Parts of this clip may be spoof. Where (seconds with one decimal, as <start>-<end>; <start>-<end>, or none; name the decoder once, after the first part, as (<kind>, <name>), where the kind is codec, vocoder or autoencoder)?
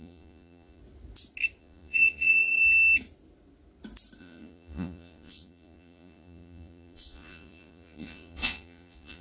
0.0-0.8 (vocoder, Vocos); 1.6-2.6; 4.2-9.2